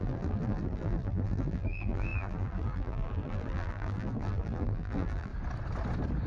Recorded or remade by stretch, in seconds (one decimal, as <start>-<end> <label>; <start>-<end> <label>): 0.0-5.3 remade; 5.3-6.3 recorded